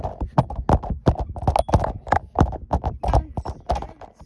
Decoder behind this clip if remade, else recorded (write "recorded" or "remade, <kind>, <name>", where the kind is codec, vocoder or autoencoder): recorded